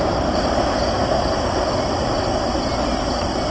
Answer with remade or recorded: recorded